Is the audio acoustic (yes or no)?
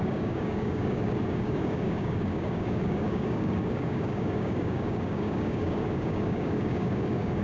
no